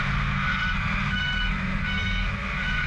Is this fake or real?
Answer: fake